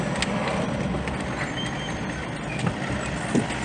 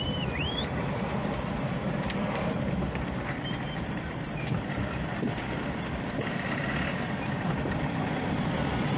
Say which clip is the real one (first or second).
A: first